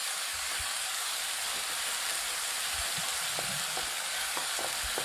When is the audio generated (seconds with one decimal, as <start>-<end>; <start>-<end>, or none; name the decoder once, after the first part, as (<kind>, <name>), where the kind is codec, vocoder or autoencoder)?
0.0-1.2 (codec, DAC); 3.9-4.6